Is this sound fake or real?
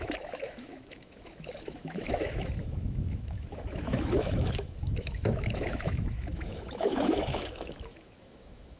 fake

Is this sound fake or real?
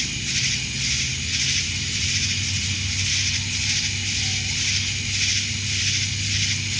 real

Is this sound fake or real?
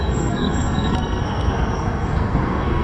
fake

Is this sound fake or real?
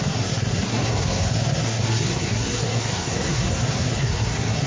fake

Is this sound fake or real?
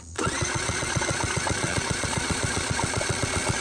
fake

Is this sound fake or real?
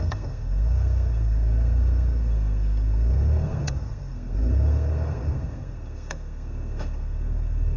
fake